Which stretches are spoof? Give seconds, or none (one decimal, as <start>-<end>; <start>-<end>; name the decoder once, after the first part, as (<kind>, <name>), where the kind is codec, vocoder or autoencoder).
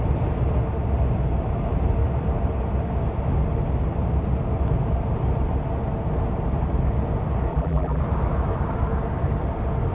7.5-8.0 (vocoder, BigVGAN v2)